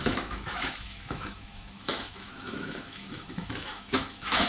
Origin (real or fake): fake